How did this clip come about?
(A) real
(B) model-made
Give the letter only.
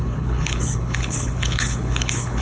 B